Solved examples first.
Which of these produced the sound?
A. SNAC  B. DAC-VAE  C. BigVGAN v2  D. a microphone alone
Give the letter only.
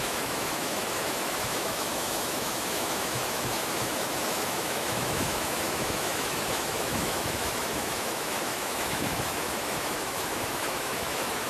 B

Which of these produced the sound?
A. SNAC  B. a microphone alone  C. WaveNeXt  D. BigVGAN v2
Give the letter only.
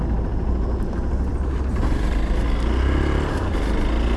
B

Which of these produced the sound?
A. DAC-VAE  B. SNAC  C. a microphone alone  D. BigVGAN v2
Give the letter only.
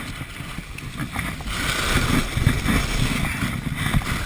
C